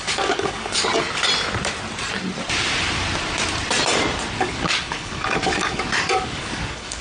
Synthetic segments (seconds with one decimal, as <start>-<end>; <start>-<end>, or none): 0.0-0.9; 4.4-7.0